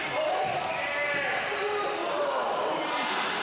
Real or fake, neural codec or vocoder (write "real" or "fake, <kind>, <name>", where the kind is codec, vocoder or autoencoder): real